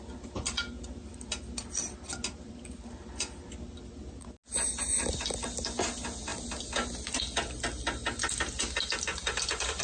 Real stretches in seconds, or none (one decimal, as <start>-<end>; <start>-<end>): 0.0-9.8